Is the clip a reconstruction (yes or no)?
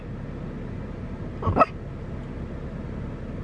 no